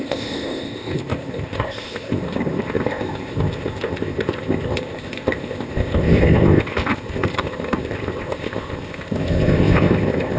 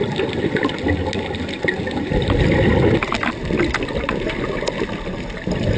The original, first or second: second